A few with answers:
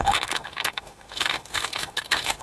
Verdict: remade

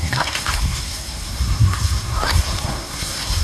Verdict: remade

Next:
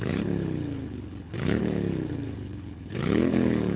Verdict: remade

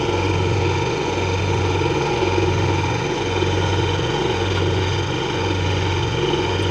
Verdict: remade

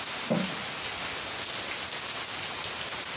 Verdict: recorded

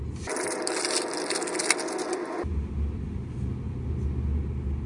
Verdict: recorded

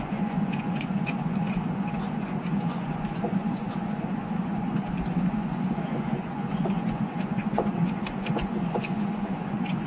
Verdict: remade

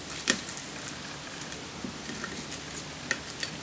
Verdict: recorded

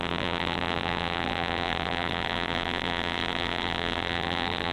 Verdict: remade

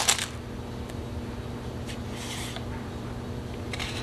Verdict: recorded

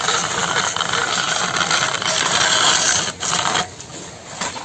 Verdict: recorded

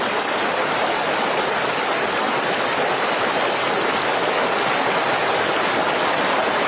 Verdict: recorded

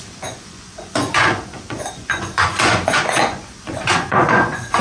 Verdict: remade